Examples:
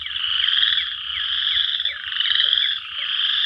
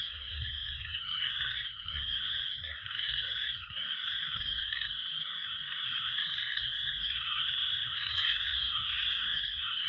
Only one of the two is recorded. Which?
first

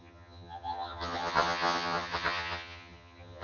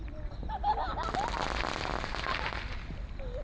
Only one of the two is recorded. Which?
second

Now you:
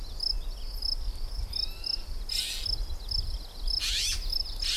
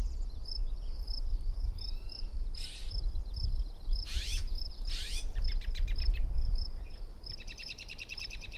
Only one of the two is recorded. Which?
first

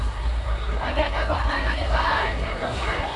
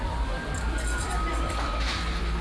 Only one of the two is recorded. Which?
second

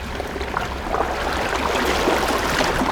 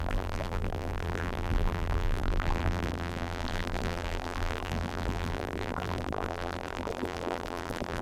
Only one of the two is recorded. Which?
first